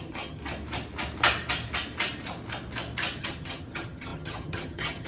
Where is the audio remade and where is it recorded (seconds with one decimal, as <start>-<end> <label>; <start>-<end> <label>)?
0.0-0.4 remade; 0.4-3.2 recorded; 3.2-5.1 remade